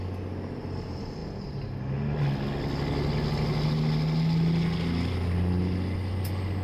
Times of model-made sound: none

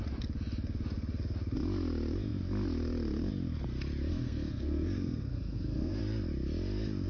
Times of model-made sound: 4.1-6.0 (codec, SNAC)

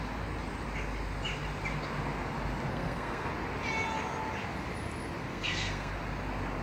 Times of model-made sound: 2.7-3.3 (codec, SNAC); 5.2-5.9

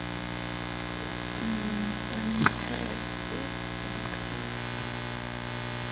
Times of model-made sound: 2.3-2.9 (codec, SNAC)

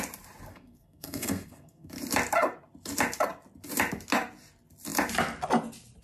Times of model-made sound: 0.5-1.9 (codec, SNAC)